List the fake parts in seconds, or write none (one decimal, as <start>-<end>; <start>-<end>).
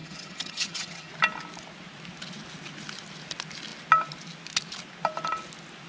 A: 0.0-1.1